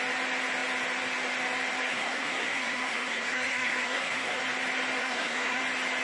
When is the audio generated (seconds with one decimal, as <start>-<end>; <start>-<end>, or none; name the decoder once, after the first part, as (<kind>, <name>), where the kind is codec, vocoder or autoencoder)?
1.9-4.4 (codec, SNAC); 5.0-5.6